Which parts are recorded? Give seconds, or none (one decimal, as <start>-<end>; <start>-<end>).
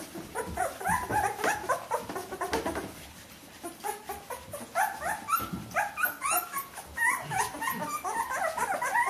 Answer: 0.0-9.1